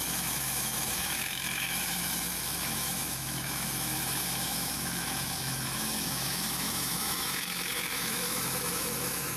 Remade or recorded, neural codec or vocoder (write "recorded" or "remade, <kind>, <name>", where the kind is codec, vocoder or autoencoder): remade, autoencoder, DAC-VAE